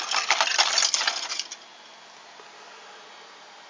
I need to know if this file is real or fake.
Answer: real